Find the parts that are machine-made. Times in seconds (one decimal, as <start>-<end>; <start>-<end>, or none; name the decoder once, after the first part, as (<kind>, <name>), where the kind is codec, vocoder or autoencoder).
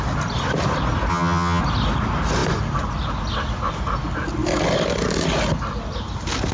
1.1-1.6 (vocoder, HiFi-GAN)